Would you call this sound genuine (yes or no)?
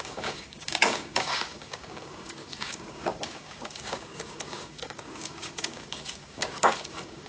no